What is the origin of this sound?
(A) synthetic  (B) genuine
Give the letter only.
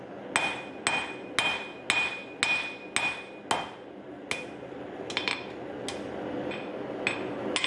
B